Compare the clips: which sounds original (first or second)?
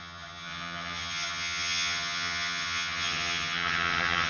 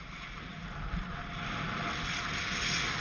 second